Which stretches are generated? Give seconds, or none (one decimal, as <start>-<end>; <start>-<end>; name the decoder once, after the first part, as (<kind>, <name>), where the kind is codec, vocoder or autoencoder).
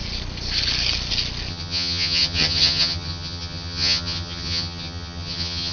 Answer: 1.5-5.7 (vocoder, HiFi-GAN)